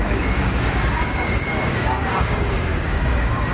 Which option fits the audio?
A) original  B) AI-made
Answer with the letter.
B